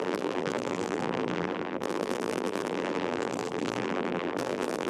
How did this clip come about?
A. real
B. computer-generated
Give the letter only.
B